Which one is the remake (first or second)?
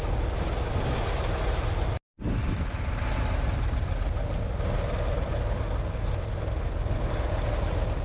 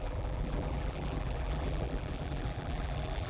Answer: second